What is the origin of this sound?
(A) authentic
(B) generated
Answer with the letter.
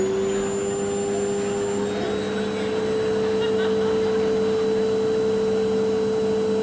A